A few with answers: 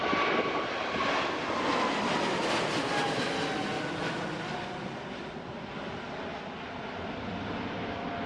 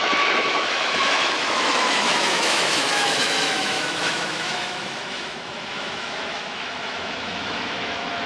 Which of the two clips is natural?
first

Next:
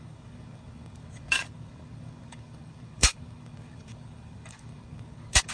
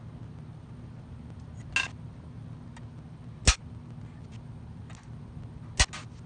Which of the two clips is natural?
second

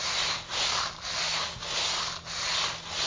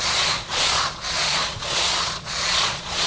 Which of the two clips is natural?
first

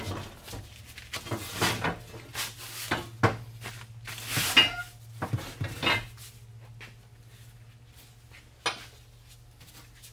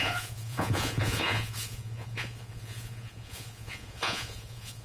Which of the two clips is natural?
first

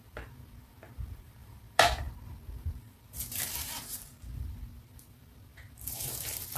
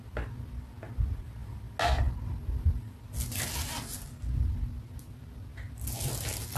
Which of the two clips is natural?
second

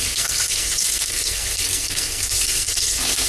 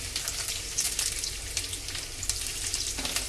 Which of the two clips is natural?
second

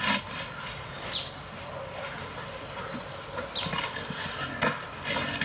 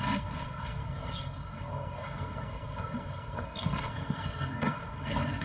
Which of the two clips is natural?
first